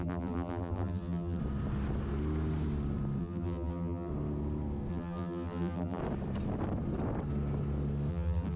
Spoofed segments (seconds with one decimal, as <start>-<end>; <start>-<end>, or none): 0.0-1.4; 3.2-4.1; 4.9-6.0; 8.1-8.6